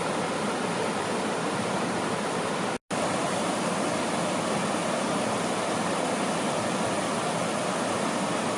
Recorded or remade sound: recorded